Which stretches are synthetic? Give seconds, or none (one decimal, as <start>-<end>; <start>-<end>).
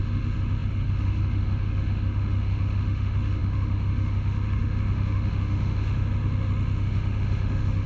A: 0.0-7.9